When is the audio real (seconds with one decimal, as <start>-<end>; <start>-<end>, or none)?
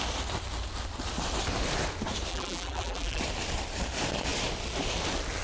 0.0-2.3; 3.2-5.4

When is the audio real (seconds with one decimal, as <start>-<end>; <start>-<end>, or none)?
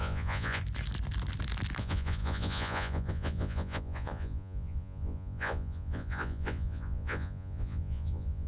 0.6-1.8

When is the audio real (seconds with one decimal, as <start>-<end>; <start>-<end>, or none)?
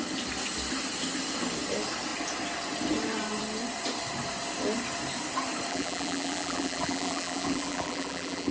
0.0-5.7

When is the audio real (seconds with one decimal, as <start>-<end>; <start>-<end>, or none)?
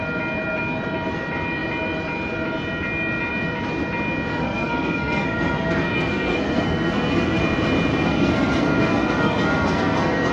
0.0-4.3; 7.4-7.9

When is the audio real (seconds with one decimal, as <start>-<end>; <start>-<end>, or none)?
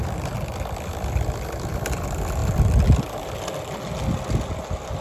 0.0-5.0